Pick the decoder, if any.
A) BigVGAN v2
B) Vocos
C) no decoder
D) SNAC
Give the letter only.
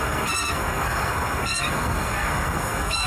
D